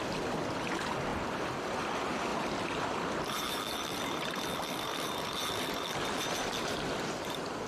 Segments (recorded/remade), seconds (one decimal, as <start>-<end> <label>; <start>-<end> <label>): 0.0-2.3 recorded; 2.3-4.2 remade; 4.2-7.7 recorded